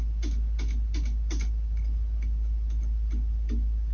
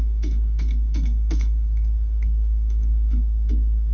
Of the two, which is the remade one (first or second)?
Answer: second